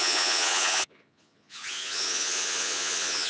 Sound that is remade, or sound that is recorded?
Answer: remade